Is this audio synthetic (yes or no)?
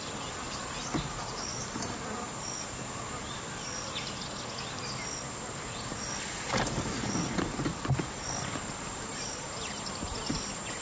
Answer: no